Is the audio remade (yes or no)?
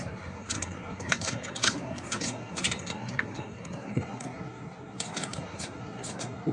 yes